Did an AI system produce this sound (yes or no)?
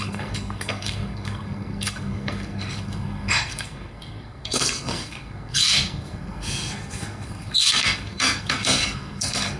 yes